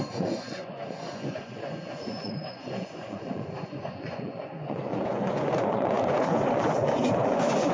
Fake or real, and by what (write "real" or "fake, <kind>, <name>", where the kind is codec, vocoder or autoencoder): fake, vocoder, Vocos